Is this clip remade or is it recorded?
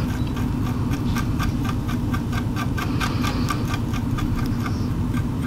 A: recorded